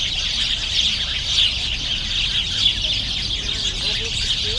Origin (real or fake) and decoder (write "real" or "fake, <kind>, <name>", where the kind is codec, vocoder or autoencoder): real